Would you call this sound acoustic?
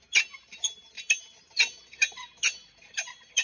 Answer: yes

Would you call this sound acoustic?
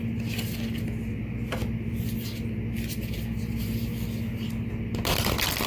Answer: yes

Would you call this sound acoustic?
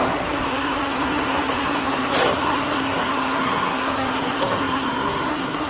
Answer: no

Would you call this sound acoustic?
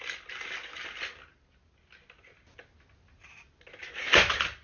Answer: yes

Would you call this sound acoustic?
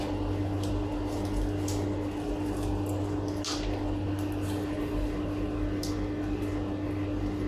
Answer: yes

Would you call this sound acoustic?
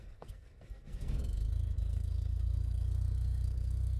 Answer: no